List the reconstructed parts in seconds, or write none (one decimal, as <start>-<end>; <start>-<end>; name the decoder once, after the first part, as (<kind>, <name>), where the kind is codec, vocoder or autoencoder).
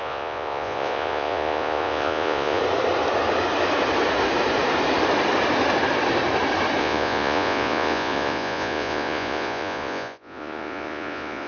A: 0.0-2.6 (vocoder, Vocos); 6.8-11.5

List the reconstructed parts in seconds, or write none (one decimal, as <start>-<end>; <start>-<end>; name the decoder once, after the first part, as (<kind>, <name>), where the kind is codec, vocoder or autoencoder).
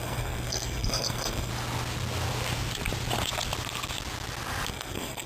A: 0.0-1.5 (codec, SNAC); 4.7-5.3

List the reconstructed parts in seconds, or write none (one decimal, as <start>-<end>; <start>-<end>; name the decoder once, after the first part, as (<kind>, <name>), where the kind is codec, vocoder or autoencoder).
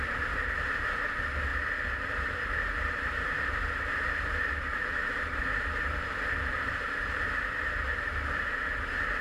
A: 0.0-9.2 (vocoder, BigVGAN v2)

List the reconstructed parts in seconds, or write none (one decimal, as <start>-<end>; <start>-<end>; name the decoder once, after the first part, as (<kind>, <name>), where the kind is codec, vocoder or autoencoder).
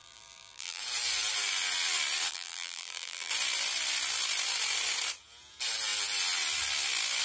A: 0.0-0.8 (vocoder, BigVGAN v2); 2.3-3.3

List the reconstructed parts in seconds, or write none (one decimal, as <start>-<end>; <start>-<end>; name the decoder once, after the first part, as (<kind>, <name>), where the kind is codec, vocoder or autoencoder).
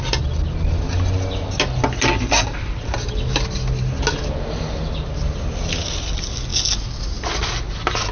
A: none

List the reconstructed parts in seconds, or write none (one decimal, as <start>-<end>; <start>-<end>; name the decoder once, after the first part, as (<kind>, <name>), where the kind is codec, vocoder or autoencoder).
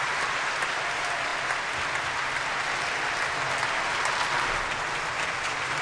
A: none